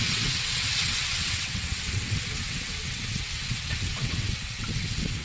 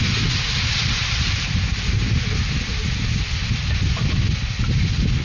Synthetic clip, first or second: first